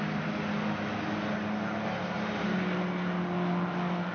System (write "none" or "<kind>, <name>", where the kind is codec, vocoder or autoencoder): none